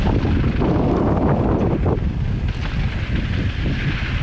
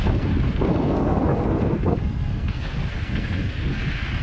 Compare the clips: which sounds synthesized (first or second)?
second